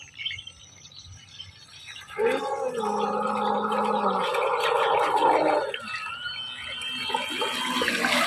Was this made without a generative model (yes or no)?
yes